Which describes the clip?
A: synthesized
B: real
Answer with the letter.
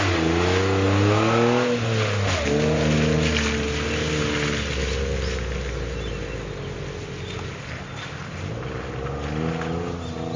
B